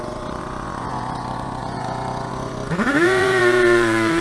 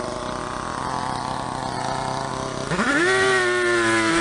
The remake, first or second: first